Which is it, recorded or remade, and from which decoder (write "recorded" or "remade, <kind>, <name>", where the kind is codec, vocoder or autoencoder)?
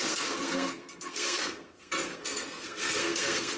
remade, codec, SNAC